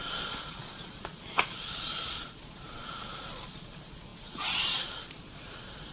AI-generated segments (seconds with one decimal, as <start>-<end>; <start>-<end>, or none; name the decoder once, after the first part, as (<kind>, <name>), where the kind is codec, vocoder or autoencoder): 0.0-5.9 (vocoder, Vocos)